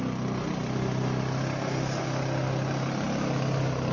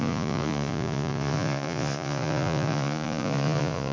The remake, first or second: second